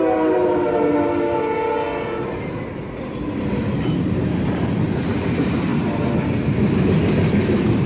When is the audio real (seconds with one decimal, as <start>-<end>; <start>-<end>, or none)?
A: 0.0-7.9